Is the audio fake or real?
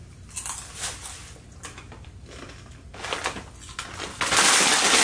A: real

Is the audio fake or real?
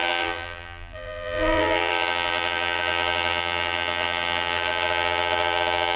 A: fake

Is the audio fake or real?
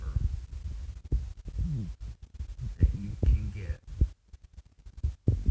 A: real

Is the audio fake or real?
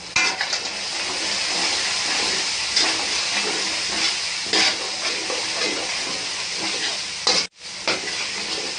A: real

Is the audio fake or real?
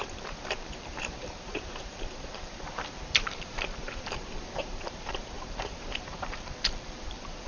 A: fake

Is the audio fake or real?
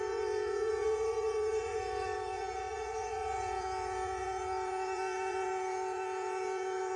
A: fake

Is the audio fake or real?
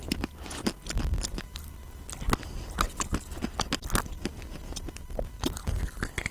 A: real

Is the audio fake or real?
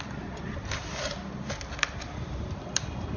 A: real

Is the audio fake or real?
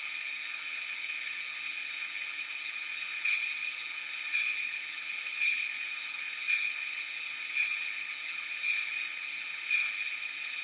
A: fake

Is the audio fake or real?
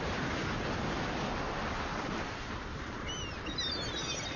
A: real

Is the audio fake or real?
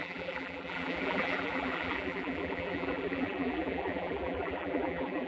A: fake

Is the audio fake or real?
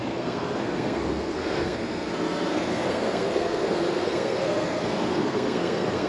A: fake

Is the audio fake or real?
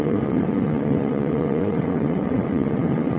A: fake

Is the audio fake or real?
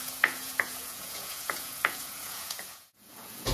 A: fake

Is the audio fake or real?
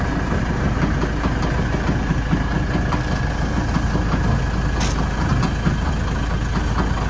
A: real